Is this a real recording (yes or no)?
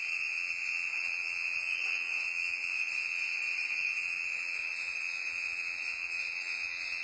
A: no